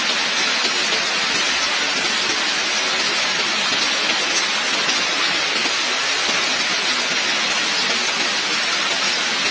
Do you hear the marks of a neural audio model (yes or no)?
no